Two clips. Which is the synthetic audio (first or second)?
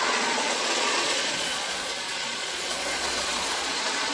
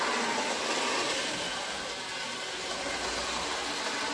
first